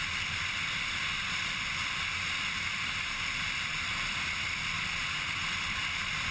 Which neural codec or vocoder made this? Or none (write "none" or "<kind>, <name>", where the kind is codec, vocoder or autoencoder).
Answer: none